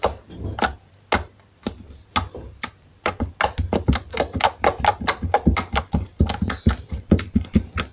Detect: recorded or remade recorded